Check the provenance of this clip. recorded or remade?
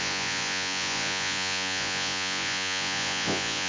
remade